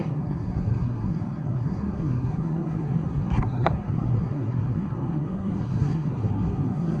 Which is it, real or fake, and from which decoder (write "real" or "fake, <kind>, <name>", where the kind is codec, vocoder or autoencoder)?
fake, codec, SNAC